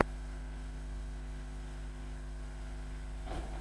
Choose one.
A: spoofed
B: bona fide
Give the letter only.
A